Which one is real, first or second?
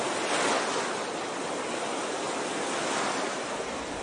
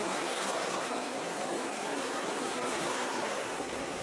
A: first